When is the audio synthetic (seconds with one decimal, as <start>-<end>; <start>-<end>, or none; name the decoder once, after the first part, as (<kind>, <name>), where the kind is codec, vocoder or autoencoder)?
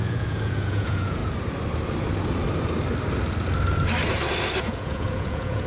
0.0-1.2 (vocoder, Vocos); 4.6-5.7